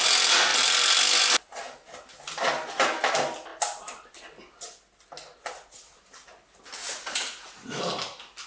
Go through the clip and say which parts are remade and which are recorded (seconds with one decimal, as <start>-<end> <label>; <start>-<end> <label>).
0.0-6.8 recorded; 6.8-7.8 remade; 7.8-8.5 recorded